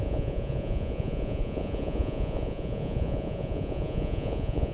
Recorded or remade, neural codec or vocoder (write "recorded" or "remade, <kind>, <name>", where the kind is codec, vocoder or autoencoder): remade, vocoder, Vocos